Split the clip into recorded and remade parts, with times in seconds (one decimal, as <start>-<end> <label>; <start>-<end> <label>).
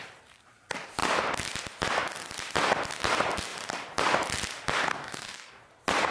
0.0-4.9 recorded; 4.9-5.6 remade; 5.6-6.1 recorded